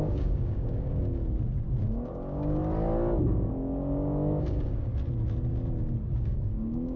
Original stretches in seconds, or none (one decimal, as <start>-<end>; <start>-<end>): 1.2-1.8; 2.6-3.5; 4.9-6.1